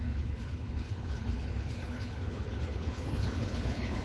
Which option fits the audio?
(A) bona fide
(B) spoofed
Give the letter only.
B